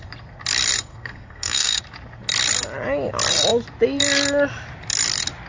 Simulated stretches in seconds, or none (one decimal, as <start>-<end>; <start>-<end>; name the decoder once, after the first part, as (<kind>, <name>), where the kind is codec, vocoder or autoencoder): 0.9-1.8 (codec, SNAC)